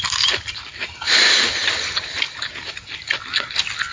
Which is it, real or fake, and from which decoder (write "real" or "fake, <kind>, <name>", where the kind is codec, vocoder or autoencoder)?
real